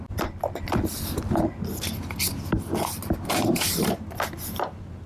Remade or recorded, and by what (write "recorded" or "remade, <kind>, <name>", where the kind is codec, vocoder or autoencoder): recorded